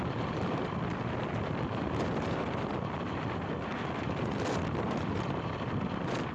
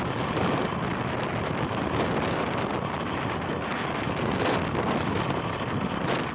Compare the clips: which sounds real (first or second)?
second